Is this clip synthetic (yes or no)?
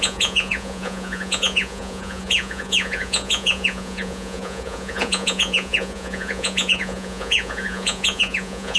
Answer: yes